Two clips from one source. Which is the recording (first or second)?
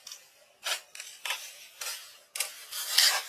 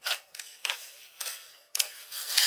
first